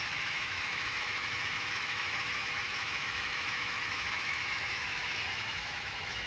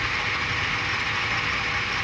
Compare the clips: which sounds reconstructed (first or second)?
first